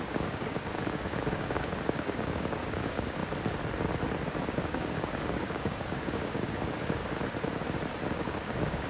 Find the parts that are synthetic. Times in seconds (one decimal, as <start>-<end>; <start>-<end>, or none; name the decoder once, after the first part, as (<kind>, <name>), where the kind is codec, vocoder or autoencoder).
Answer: 0.0-3.2 (codec, DAC); 4.5-7.0; 8.1-8.9